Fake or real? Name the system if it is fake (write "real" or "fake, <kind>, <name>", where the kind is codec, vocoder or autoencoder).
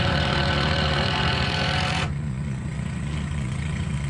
fake, vocoder, Vocos